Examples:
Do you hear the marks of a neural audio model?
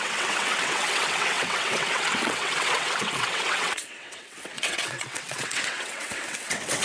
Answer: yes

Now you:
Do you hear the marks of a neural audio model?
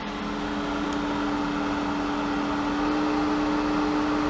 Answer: no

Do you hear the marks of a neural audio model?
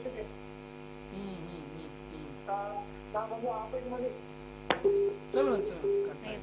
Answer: no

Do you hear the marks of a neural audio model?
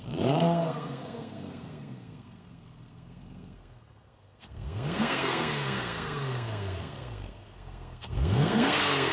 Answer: yes